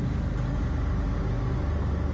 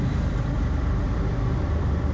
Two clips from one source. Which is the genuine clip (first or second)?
first